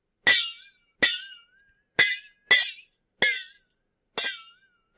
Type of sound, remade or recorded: recorded